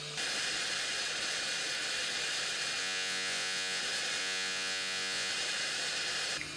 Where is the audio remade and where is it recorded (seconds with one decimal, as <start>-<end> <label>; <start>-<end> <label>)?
0.0-2.8 recorded; 2.8-3.8 remade; 3.8-4.2 recorded; 4.2-5.3 remade; 5.3-6.6 recorded